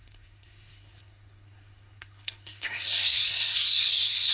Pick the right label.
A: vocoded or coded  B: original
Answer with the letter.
A